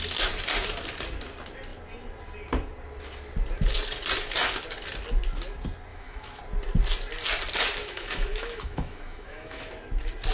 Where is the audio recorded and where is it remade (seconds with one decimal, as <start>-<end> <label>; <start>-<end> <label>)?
0.0-5.9 recorded; 5.9-6.4 remade; 6.4-7.8 recorded; 7.8-9.6 remade; 9.6-10.3 recorded